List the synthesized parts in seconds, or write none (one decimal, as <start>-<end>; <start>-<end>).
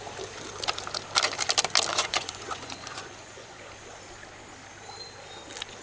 1.9-3.7